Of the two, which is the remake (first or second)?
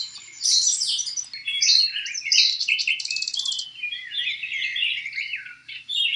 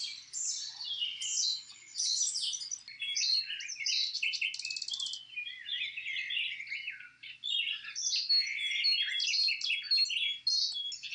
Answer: first